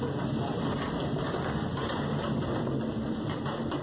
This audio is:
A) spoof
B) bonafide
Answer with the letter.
B